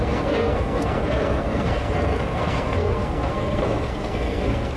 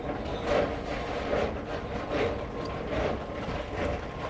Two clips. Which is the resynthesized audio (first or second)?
first